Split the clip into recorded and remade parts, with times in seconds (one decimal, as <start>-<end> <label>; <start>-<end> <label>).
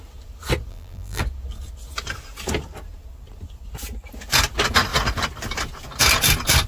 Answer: 0.0-0.7 recorded; 0.7-1.2 remade; 1.2-6.7 recorded